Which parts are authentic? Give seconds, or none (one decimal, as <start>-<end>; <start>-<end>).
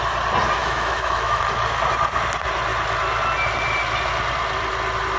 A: 0.0-0.6; 1.4-5.2